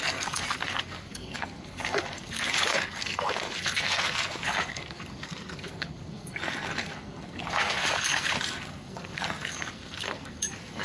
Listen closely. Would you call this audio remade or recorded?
remade